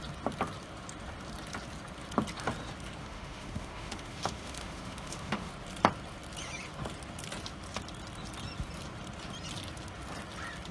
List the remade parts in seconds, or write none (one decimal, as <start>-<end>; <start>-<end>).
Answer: 3.0-5.5

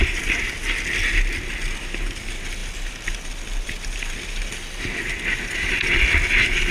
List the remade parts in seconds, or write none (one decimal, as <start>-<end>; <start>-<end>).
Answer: none

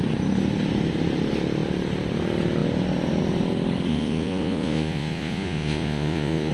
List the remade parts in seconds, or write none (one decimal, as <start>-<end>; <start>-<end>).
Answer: 3.9-6.5

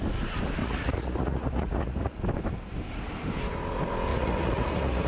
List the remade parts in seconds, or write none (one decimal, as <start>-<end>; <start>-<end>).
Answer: 0.6-2.2; 4.1-5.1

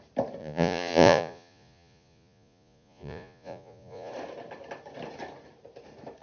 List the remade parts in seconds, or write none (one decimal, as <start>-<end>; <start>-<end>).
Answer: 0.4-4.1